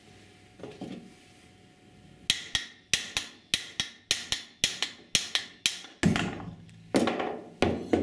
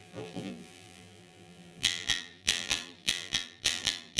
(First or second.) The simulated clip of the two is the second